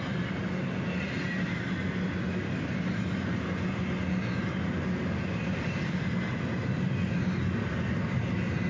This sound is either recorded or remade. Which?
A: recorded